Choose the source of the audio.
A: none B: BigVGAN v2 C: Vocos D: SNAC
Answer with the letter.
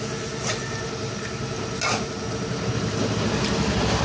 A